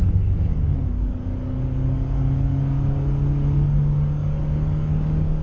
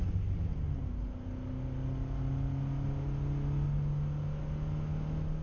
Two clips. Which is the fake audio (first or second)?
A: first